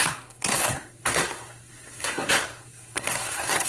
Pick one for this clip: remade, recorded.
remade